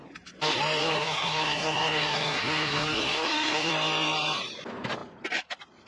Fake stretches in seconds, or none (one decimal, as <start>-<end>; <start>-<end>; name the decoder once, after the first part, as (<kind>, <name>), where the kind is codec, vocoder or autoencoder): 0.8-3.7 (codec, SNAC)